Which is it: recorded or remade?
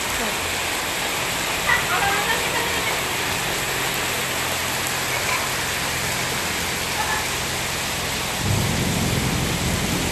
recorded